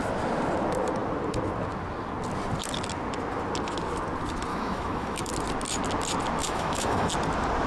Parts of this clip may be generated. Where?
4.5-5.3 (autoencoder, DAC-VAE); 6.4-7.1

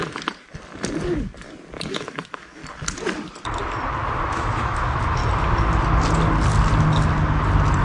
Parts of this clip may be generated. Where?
1.9-2.6 (autoencoder, DAC-VAE); 4.3-5.2